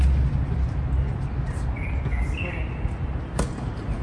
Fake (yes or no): no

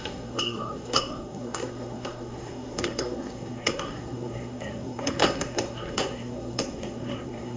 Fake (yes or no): yes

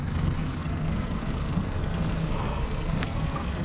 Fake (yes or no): yes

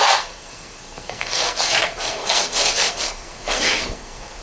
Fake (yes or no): yes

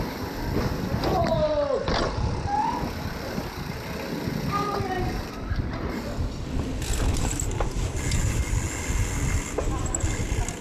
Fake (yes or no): no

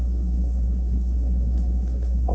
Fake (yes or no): yes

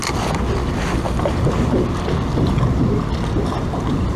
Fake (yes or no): no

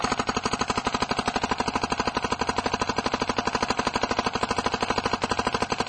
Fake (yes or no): no